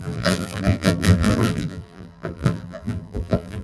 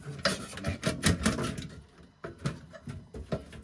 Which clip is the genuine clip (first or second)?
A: second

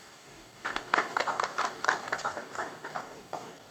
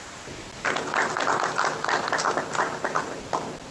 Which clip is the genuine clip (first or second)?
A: second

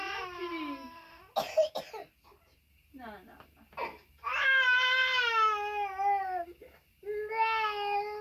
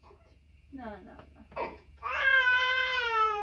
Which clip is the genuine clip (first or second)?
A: first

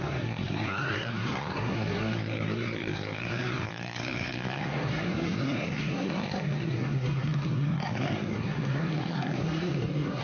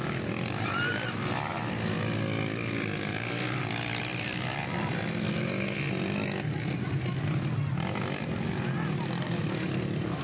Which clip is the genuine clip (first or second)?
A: second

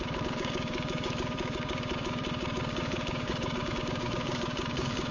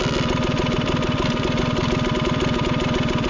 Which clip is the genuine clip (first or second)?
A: second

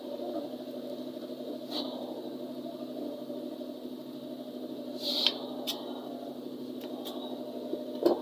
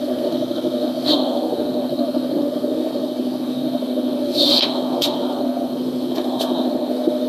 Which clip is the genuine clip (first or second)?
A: first